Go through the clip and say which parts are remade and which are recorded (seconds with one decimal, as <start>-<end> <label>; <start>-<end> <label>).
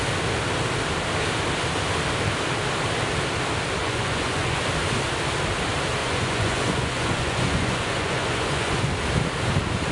0.0-3.8 recorded; 3.8-4.6 remade; 4.6-6.0 recorded; 6.0-8.9 remade; 8.9-9.9 recorded